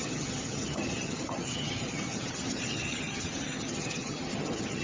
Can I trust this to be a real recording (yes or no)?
no